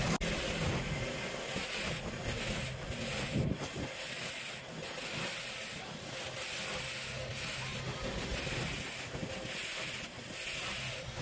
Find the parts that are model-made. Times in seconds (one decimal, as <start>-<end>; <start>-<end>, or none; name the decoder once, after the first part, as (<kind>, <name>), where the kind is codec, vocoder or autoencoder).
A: none